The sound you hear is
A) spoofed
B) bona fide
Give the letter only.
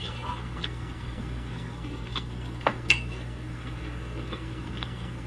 A